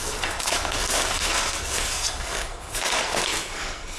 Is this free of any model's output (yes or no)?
no